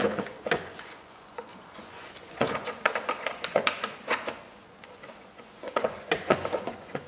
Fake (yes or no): yes